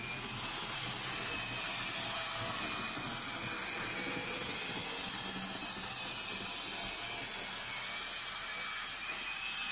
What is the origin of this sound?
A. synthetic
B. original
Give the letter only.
B